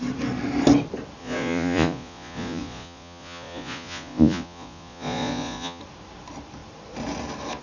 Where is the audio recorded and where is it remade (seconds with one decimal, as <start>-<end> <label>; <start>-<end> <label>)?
0.0-1.2 recorded; 1.2-5.8 remade; 5.8-7.6 recorded